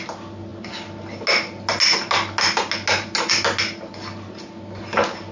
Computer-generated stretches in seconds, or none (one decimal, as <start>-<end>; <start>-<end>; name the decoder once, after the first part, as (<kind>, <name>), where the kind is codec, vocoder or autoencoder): none